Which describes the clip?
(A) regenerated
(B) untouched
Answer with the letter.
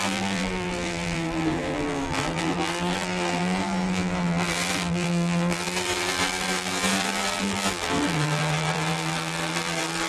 A